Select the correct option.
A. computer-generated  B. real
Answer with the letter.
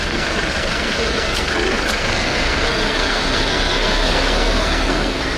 A